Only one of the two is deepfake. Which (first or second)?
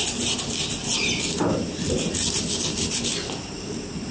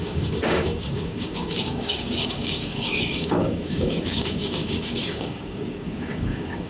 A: second